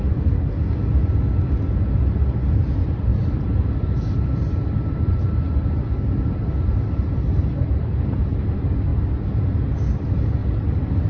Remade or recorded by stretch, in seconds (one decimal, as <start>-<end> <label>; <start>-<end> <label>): 0.0-3.1 recorded; 3.1-8.4 remade; 8.4-10.4 recorded; 10.4-11.1 remade